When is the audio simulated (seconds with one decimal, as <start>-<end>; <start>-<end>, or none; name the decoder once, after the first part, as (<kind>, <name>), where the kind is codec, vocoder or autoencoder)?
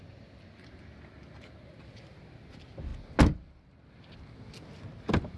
none